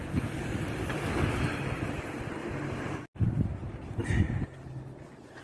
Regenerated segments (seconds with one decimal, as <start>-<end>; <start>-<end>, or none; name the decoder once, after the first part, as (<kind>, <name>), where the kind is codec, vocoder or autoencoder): none